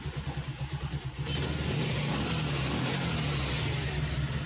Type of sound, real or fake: real